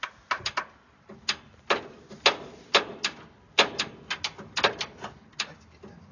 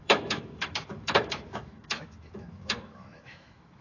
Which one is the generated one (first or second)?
second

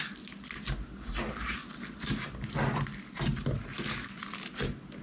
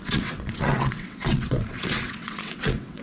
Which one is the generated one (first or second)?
second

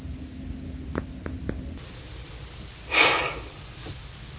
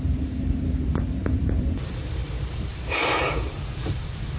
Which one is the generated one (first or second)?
second